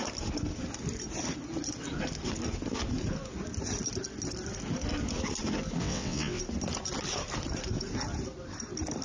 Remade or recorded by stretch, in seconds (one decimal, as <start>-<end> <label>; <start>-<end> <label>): 0.0-5.8 recorded; 5.8-6.4 remade; 6.4-9.0 recorded